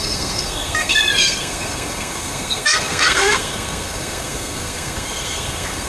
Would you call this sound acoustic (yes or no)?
no